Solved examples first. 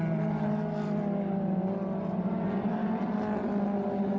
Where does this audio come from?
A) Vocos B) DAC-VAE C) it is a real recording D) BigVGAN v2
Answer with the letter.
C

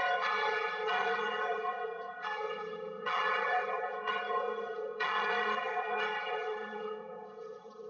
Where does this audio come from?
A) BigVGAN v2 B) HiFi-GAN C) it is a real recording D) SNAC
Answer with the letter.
B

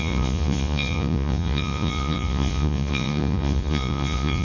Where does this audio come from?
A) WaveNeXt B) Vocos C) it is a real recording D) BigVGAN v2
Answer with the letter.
B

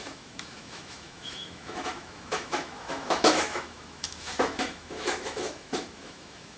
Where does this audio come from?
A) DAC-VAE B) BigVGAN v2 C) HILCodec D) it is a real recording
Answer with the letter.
A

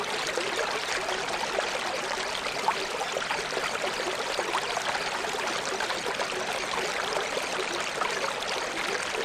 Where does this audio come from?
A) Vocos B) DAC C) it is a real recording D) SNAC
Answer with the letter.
C